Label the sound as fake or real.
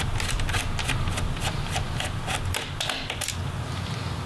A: real